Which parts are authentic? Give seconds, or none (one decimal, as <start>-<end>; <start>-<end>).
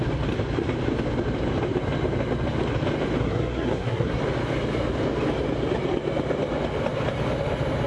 0.0-3.2; 4.2-7.9